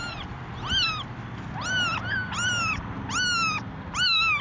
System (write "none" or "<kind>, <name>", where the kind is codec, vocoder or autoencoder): none